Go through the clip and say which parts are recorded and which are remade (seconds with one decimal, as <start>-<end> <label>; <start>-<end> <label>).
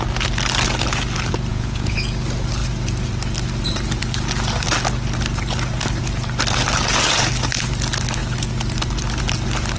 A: 0.0-1.5 recorded; 1.5-2.0 remade; 2.0-9.8 recorded